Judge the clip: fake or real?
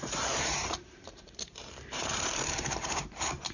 fake